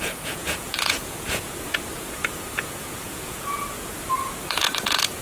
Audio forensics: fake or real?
fake